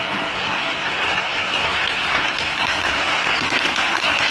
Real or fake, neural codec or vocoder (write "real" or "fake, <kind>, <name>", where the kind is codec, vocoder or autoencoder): fake, codec, SNAC